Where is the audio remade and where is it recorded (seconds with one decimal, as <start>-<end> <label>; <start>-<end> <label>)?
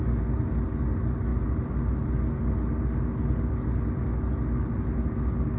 0.0-5.6 recorded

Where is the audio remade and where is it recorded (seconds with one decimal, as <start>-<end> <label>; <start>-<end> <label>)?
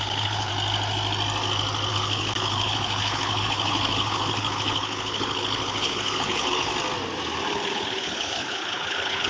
0.0-0.5 remade; 0.5-1.9 recorded; 1.9-6.7 remade; 6.7-7.5 recorded; 7.5-9.3 remade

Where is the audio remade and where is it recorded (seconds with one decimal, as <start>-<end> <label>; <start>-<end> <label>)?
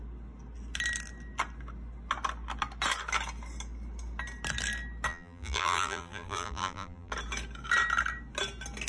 0.0-5.1 recorded; 5.1-7.1 remade; 7.1-8.9 recorded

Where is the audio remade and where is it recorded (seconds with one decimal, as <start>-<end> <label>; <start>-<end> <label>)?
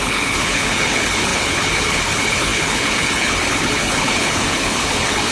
0.0-5.3 remade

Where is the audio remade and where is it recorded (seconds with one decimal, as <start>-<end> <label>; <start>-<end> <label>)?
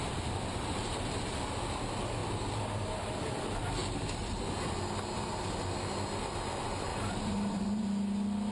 0.0-1.7 remade; 1.7-2.2 recorded; 2.2-3.1 remade; 3.1-3.8 recorded; 3.8-4.4 remade; 4.4-6.9 recorded; 6.9-7.5 remade; 7.5-8.5 recorded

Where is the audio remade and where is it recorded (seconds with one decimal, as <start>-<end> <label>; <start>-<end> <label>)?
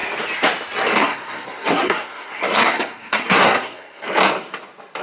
0.0-1.0 recorded; 1.0-4.0 remade; 4.0-5.0 recorded